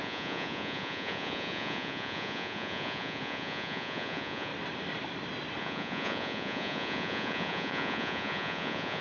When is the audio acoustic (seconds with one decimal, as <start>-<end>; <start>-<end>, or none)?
4.5-5.6